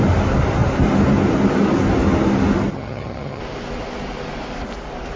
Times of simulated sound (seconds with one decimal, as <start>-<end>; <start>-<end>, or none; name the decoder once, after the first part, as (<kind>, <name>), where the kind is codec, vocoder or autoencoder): 2.7-3.4 (vocoder, HiFi-GAN)